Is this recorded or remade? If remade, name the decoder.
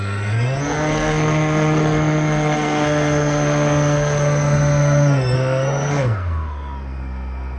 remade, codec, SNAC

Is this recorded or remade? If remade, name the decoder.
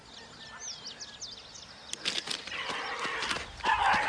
recorded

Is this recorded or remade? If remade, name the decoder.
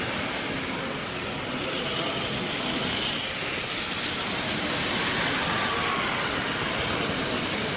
recorded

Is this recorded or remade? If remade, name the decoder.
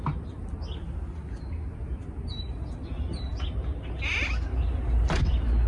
recorded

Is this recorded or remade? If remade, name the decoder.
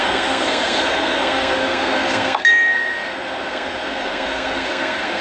remade, codec, SNAC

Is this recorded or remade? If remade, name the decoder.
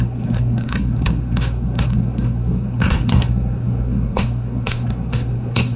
remade, codec, SNAC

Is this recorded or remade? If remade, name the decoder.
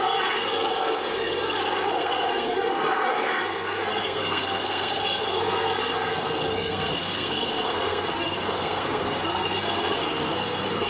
remade, codec, SNAC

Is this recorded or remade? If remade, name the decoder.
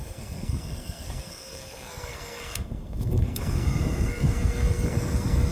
remade, codec, SNAC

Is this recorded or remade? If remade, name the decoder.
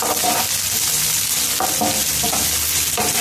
recorded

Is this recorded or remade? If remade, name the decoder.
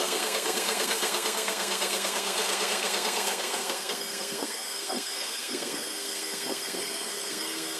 remade, codec, SNAC